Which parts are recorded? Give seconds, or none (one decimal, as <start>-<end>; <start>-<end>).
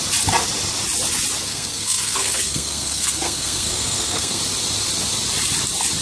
0.0-1.5; 4.4-6.0